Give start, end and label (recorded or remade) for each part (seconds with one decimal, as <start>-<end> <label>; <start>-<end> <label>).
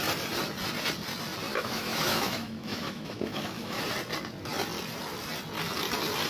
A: 0.0-1.5 recorded; 1.5-3.8 remade; 3.8-6.3 recorded